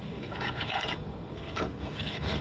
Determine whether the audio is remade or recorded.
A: remade